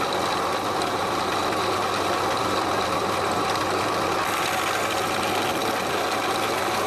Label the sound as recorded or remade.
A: recorded